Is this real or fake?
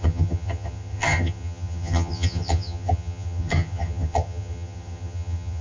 fake